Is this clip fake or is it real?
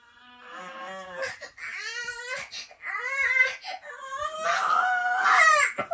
real